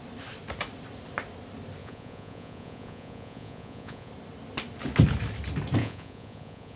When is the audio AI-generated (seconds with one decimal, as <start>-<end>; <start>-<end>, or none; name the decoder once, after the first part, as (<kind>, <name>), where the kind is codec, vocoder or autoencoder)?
1.8-4.1 (vocoder, Vocos); 5.8-6.8